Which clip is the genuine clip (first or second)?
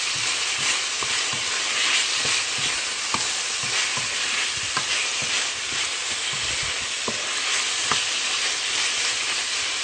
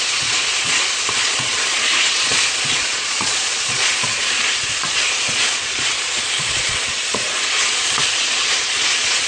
first